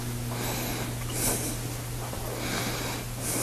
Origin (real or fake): real